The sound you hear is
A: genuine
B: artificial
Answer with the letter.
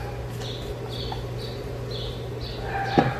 A